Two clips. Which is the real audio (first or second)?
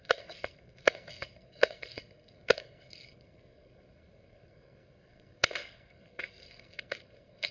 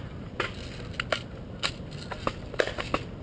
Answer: second